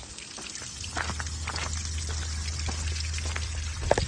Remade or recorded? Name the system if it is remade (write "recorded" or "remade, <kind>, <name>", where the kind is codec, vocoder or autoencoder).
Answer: recorded